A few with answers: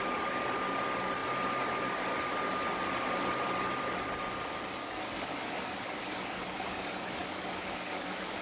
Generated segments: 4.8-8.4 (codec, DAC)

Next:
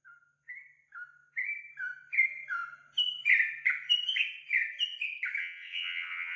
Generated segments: 5.4-6.4 (vocoder, WaveNeXt)

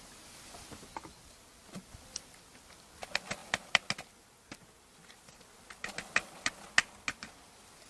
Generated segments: none

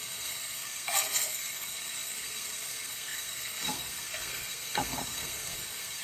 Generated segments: 0.0-6.0 (codec, SNAC)

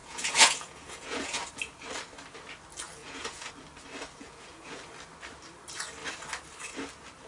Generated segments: 0.0-1.5 (vocoder, Vocos); 3.0-3.5; 4.2-4.8

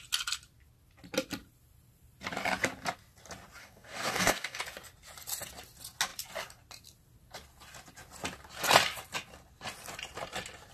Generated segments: 3.6-4.6 (codec, DAC)

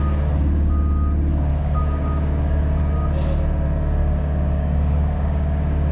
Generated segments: 1.5-2.8 (codec, DAC); 4.0-5.9

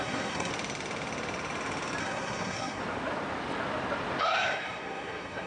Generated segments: 0.0-0.5 (codec, SNAC); 2.0-2.8; 4.2-5.5